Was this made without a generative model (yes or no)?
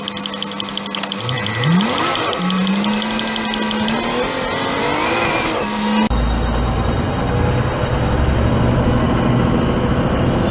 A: yes